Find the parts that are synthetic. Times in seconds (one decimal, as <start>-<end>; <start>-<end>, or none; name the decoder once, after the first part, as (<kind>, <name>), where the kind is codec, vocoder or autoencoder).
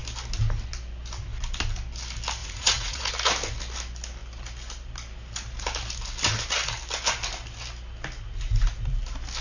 2.4-3.1 (vocoder, Vocos)